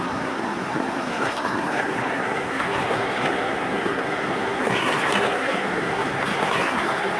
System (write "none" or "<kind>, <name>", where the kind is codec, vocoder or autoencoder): codec, SNAC